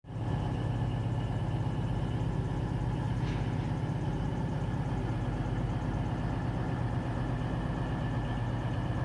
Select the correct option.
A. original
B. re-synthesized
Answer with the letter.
A